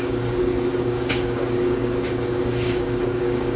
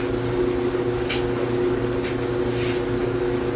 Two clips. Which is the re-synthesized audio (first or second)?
first